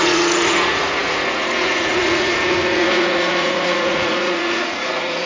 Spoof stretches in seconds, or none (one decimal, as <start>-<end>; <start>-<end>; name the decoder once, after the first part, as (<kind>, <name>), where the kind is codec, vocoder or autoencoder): 0.0-5.3 (vocoder, Vocos)